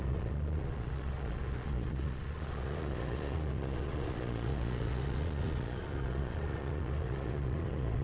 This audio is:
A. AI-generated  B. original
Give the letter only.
A